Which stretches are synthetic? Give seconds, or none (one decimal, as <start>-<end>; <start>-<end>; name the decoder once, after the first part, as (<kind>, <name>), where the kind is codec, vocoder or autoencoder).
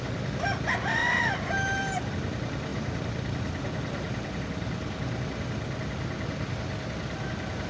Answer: 1.0-2.1 (vocoder, BigVGAN v2); 2.7-4.4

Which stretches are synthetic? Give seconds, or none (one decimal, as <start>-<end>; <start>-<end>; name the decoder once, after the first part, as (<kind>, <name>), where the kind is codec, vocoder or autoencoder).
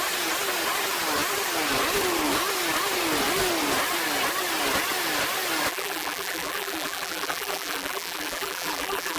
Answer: 5.7-9.2 (vocoder, BigVGAN v2)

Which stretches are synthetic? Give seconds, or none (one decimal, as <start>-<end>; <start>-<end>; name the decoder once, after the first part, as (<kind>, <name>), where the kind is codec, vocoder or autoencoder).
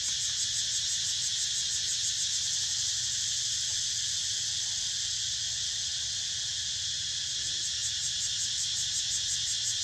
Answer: none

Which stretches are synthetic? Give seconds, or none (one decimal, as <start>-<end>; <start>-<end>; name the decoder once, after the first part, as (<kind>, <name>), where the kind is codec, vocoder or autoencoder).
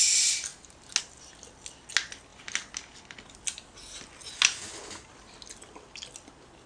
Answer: none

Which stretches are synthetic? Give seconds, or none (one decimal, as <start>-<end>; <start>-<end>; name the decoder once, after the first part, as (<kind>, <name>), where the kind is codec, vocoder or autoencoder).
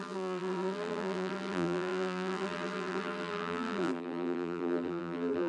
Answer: 0.0-5.5 (vocoder, BigVGAN v2)